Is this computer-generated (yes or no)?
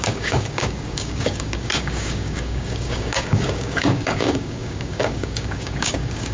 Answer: yes